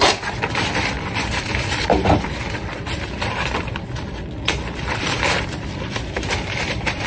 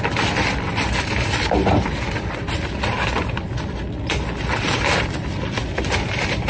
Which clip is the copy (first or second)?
first